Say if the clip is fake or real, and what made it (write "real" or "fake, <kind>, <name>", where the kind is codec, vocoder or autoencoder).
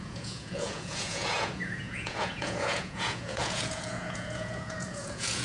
fake, vocoder, Vocos